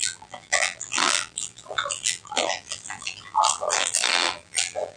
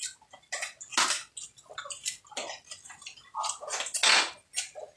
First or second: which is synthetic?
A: first